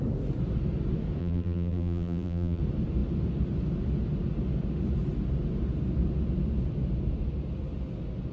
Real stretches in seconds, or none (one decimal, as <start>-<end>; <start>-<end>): 0.0-1.2; 2.6-8.3